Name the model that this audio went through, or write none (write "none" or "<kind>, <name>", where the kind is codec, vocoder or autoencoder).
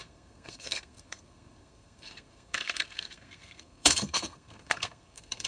codec, SNAC